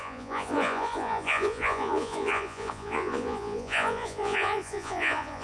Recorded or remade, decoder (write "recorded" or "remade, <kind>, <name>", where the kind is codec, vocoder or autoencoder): remade, vocoder, Vocos